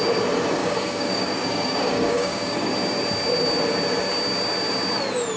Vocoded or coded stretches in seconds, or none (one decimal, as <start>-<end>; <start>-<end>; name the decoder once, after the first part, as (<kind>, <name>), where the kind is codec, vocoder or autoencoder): 0.6-2.7 (codec, DAC)